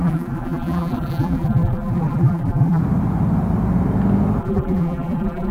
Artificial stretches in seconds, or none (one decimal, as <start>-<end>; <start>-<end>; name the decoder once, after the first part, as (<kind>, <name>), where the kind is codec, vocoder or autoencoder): 0.0-2.8 (vocoder, BigVGAN v2); 4.4-5.5

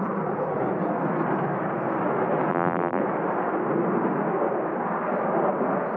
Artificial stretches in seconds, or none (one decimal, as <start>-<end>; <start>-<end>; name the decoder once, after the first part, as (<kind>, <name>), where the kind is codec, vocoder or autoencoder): 2.5-3.0 (vocoder, BigVGAN v2)

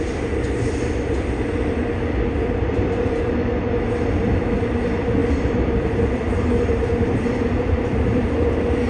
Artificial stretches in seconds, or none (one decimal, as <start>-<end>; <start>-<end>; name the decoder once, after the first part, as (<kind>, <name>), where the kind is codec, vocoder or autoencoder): 5.2-8.3 (vocoder, BigVGAN v2)